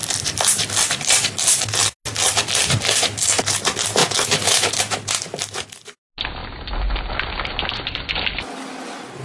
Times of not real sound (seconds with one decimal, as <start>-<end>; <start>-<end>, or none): 4.0-4.8